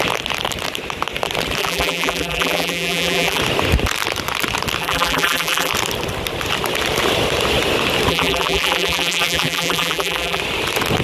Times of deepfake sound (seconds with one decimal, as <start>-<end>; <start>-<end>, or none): 1.6-3.4; 4.8-5.7; 8.1-10.4